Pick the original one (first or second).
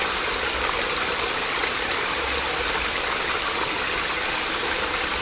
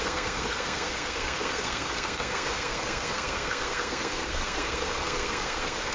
first